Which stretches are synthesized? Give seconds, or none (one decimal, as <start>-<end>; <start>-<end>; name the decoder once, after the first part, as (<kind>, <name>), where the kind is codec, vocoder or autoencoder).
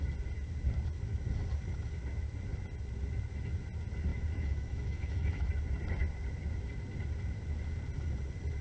4.1-5.5 (autoencoder, DAC-VAE)